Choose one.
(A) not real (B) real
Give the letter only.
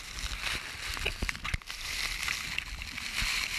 B